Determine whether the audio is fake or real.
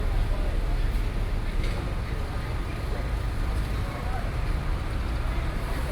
fake